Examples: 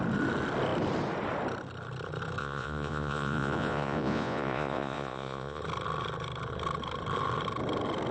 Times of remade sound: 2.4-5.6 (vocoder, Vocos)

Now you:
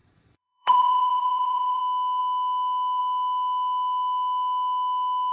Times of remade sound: 0.0-1.8 (vocoder, Vocos)

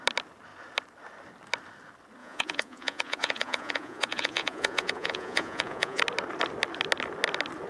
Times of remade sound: 2.2-6.0 (vocoder, Vocos)

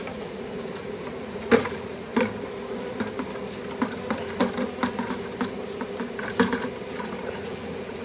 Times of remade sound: 0.0-2.1 (vocoder, Vocos); 6.9-8.0

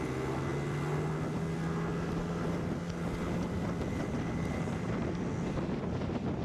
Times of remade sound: none

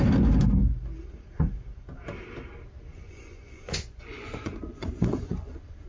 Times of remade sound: 2.9-5.5 (vocoder, Vocos)

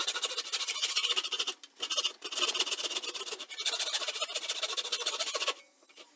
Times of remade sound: 0.7-1.5 (vocoder, Vocos); 4.9-5.6

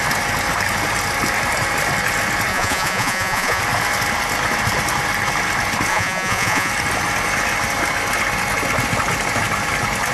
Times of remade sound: 2.5-3.6 (vocoder, Vocos); 5.9-6.7